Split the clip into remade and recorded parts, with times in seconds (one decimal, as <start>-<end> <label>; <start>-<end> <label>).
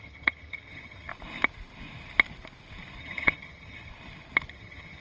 0.0-1.1 remade; 1.1-3.0 recorded; 3.0-3.9 remade; 3.9-4.5 recorded; 4.5-5.0 remade